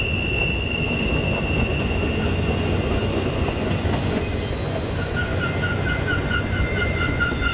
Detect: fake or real fake